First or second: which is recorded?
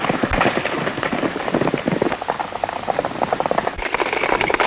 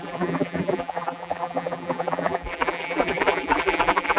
first